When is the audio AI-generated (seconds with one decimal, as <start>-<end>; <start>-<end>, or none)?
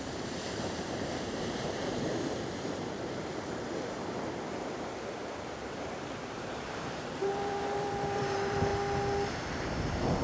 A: 0.0-8.7; 9.3-10.2